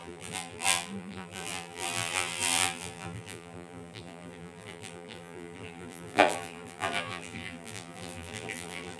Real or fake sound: fake